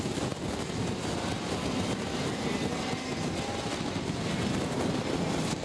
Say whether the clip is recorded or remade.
recorded